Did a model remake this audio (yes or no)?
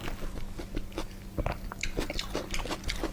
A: no